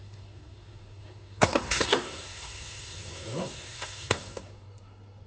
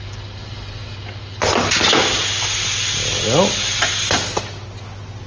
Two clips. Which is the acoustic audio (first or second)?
second